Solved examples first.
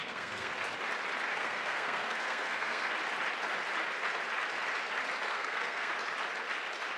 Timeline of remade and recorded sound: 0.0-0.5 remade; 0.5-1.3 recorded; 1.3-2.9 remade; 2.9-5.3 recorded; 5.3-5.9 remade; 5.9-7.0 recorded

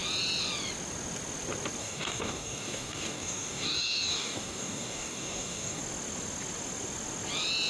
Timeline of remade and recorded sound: 0.0-1.8 recorded; 1.8-5.8 remade; 5.8-7.7 recorded

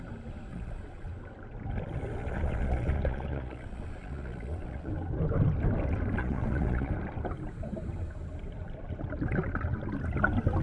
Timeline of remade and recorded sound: 0.0-0.5 recorded; 0.5-1.1 remade; 1.1-2.2 recorded; 2.2-4.9 remade; 4.9-6.2 recorded; 6.2-6.9 remade; 6.9-10.6 recorded

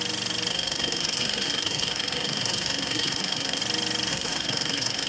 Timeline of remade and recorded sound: 0.0-0.5 recorded; 0.5-3.6 remade; 3.6-4.1 recorded; 4.1-5.1 remade